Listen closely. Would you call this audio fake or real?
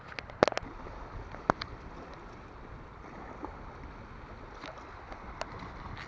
real